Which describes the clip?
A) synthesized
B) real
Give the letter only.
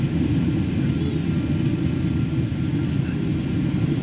B